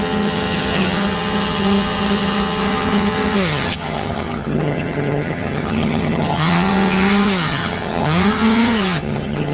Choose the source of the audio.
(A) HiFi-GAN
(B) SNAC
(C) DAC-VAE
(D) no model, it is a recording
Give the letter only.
A